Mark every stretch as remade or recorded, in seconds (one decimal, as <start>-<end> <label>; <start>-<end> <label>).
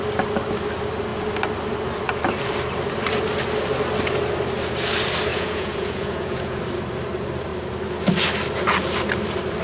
0.0-5.3 recorded; 5.3-6.6 remade; 6.6-9.6 recorded